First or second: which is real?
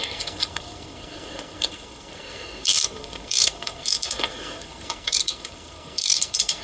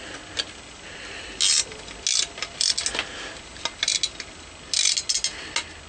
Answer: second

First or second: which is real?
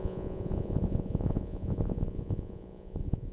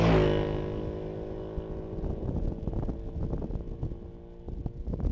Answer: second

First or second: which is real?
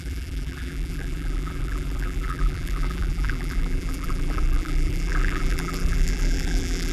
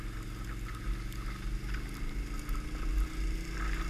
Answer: second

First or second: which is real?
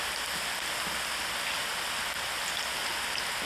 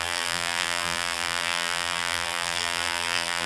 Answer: first